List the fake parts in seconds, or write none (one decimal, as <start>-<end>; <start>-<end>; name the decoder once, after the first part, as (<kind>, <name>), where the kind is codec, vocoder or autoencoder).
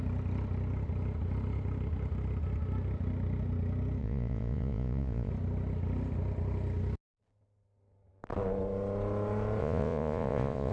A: 4.0-5.3 (vocoder, Vocos); 9.6-10.7